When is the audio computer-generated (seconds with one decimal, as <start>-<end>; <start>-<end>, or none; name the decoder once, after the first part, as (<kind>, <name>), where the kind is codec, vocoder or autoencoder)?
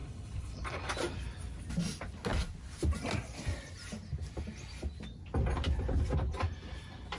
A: 0.0-0.9 (codec, HILCodec)